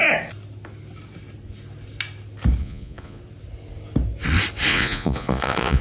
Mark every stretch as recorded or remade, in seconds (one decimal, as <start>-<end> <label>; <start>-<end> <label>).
0.0-2.6 recorded; 2.6-3.2 remade; 3.2-4.7 recorded; 4.7-5.8 remade